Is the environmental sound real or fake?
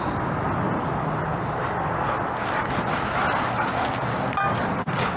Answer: real